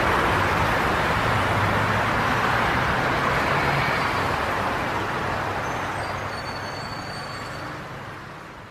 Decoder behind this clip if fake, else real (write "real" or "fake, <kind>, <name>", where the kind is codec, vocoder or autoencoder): real